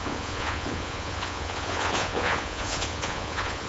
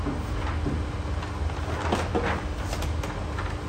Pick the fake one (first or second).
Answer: first